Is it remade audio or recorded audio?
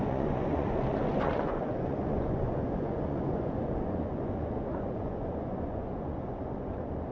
remade